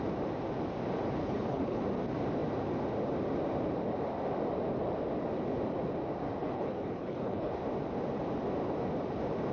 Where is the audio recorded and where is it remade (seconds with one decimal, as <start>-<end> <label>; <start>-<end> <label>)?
0.0-1.2 recorded; 1.2-1.8 remade; 1.8-6.4 recorded; 6.4-7.5 remade; 7.5-9.5 recorded